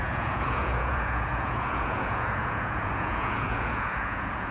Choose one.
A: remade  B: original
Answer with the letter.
A